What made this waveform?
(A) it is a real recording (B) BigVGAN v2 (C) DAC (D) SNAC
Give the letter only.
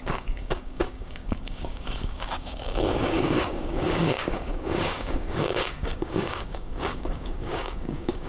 C